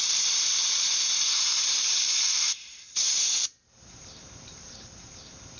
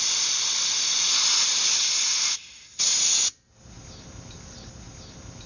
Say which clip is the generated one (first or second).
first